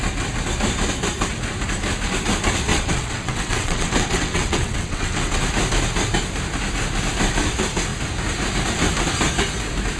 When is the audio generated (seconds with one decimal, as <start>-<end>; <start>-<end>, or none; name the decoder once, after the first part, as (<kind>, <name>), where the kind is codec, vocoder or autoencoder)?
2.7-5.4 (vocoder, WaveNeXt)